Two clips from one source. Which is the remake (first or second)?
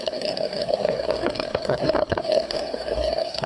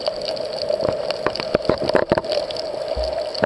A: first